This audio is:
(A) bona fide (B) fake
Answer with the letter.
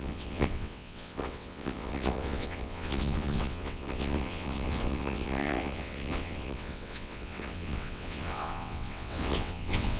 B